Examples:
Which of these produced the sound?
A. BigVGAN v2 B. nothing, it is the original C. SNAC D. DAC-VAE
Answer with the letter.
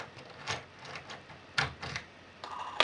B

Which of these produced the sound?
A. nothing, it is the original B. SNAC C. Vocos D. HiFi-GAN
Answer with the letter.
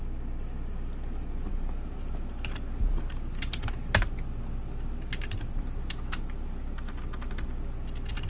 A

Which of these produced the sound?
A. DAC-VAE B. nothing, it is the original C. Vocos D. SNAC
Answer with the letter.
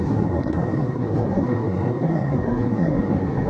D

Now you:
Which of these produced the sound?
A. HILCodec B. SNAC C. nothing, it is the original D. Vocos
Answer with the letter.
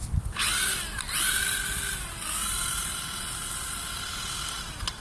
C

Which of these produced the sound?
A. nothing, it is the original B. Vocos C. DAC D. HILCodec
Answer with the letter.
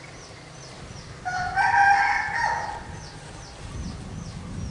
A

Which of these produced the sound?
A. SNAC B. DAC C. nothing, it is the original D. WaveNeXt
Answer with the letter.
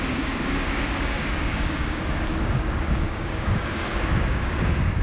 B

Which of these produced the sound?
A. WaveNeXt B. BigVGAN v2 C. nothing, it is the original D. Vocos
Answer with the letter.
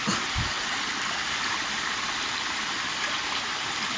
C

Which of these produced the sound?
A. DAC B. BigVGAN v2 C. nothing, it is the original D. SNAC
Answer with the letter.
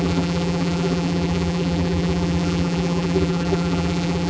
B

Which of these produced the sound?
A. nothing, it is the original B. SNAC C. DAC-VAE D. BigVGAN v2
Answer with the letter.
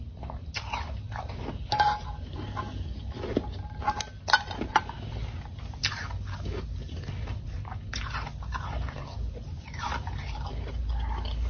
A